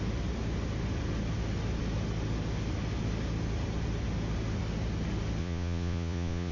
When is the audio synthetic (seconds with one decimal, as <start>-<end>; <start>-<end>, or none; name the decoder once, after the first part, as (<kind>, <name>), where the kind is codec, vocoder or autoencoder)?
5.4-6.5 (vocoder, Vocos)